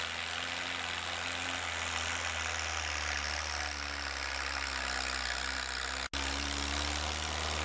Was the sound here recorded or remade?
recorded